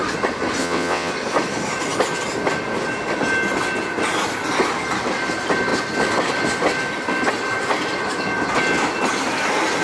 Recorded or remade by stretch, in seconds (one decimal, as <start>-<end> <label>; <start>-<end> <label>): 0.0-0.6 recorded; 0.6-1.1 remade; 1.1-9.8 recorded